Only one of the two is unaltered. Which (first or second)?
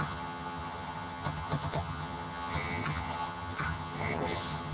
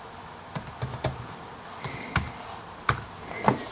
second